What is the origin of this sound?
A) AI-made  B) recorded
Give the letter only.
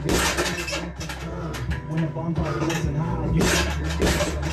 B